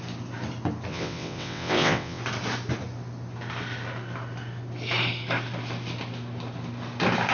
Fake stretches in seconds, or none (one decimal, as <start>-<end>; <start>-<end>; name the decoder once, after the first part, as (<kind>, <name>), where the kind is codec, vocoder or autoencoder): 0.9-2.2 (vocoder, WaveNeXt)